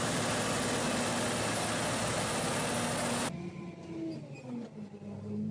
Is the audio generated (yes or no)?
no